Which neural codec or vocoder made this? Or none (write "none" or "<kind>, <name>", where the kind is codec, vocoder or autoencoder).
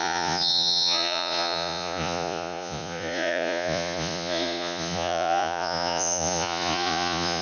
vocoder, Vocos